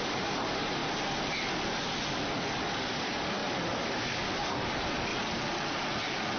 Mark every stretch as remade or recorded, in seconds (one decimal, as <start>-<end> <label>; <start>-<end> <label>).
0.0-0.8 remade; 0.8-2.8 recorded; 2.8-5.1 remade; 5.1-6.4 recorded